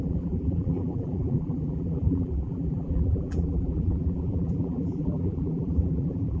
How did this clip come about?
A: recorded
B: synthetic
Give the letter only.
B